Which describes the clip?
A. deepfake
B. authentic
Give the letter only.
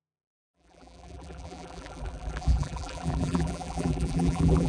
A